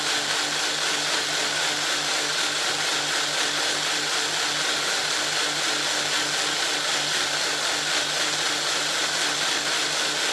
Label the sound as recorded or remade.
recorded